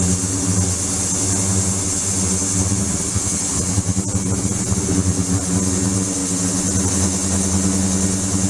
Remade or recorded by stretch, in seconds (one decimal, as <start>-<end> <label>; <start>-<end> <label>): 0.0-8.5 recorded